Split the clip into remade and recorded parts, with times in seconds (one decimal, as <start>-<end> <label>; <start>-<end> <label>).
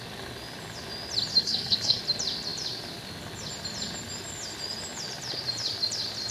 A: 0.0-1.4 recorded; 1.4-2.0 remade; 2.0-6.3 recorded